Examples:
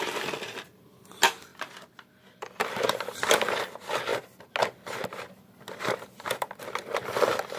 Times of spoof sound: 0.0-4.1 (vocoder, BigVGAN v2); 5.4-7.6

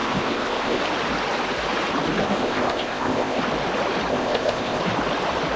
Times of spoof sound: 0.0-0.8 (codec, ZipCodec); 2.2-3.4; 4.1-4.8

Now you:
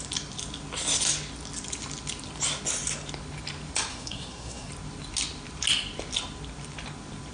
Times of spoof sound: 3.9-4.7 (codec, SNAC)

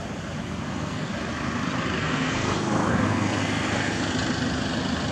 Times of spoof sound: 0.4-1.1 (codec, SNAC); 2.0-4.1

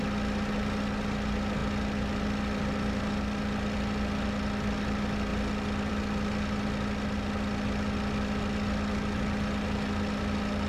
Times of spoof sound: none

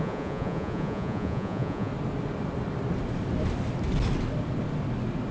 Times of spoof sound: 0.0-1.9 (vocoder, Vocos)

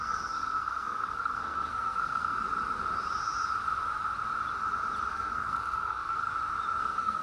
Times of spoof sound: 0.0-2.4 (codec, SNAC); 5.1-6.3; 6.8-7.2